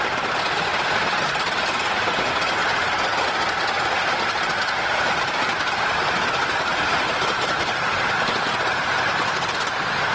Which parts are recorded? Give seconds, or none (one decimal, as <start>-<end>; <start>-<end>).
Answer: 0.0-10.1